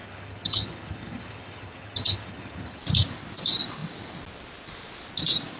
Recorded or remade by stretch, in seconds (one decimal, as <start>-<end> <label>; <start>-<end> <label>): 0.0-2.8 remade; 2.8-5.6 recorded